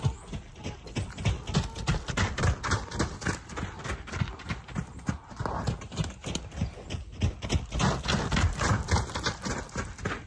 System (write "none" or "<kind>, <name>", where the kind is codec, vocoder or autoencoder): none